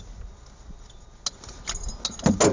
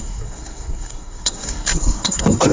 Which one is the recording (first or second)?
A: first